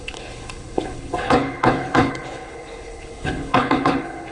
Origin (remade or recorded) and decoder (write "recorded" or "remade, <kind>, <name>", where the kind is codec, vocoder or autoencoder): remade, codec, HILCodec